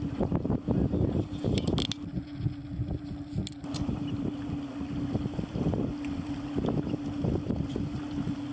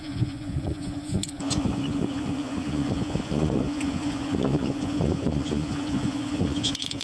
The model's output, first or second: second